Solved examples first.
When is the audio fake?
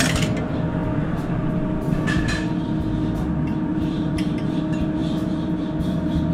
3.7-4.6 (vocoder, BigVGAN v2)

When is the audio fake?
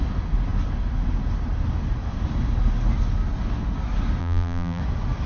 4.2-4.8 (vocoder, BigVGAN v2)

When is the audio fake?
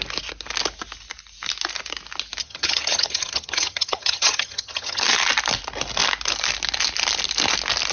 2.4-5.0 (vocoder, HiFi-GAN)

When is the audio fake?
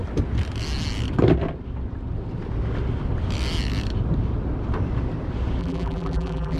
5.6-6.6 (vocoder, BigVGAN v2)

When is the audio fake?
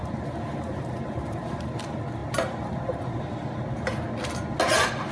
0.0-1.7 (vocoder, BigVGAN v2)